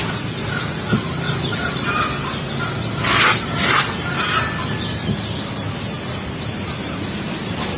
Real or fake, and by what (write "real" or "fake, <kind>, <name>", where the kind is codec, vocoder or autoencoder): real